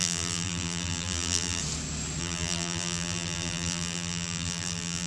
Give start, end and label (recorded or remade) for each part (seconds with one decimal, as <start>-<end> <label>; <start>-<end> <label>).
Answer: 0.0-1.6 remade; 1.6-2.2 recorded; 2.2-5.1 remade